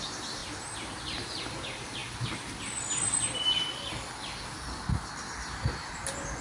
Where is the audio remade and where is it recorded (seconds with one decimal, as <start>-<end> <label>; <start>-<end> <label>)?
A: 0.0-0.4 recorded; 0.4-1.4 remade; 1.4-6.4 recorded